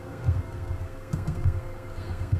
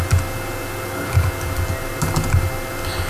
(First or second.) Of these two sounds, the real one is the second